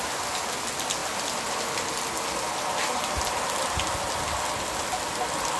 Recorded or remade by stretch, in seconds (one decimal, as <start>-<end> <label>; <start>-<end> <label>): 0.0-5.6 recorded